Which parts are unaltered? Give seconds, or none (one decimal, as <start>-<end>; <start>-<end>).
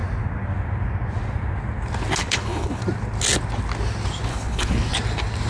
0.0-2.2; 2.8-4.3; 4.9-5.5